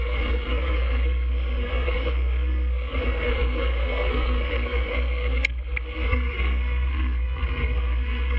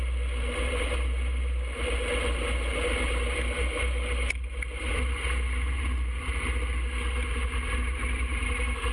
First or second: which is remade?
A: first